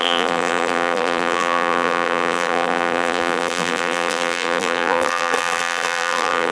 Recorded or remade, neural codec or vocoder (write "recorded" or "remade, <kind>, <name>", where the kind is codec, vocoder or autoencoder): remade, vocoder, BigVGAN v2